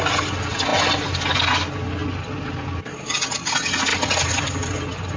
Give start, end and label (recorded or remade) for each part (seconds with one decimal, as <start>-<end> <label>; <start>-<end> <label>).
0.0-3.9 recorded; 3.9-5.2 remade